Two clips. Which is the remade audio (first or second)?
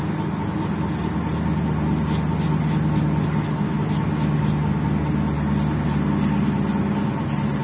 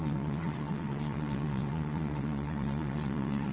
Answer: second